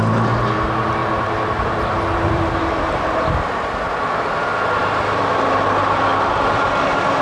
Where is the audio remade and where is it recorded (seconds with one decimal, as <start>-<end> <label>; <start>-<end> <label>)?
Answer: 0.0-1.0 recorded; 1.0-2.8 remade; 2.8-4.8 recorded; 4.8-5.3 remade; 5.3-6.1 recorded; 6.1-6.7 remade; 6.7-7.2 recorded